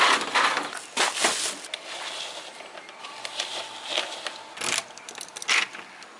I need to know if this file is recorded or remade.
recorded